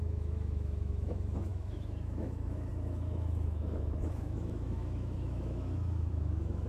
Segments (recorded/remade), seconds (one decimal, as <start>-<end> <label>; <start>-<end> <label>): 0.0-6.7 remade